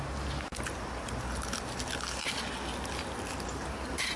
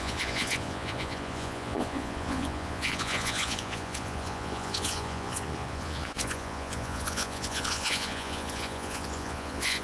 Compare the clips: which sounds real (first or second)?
first